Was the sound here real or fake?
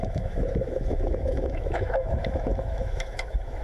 fake